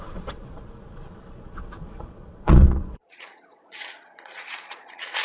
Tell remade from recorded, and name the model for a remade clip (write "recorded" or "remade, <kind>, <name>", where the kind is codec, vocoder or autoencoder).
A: remade, vocoder, Vocos